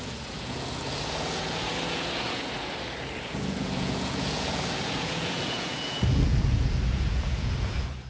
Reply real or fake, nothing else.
fake